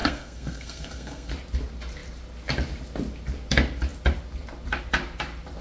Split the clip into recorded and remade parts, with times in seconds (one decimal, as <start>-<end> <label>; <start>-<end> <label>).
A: 0.0-1.3 remade; 1.3-5.6 recorded